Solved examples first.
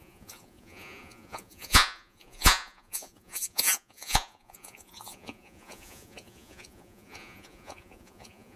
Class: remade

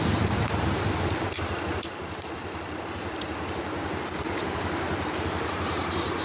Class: remade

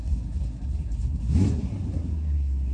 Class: remade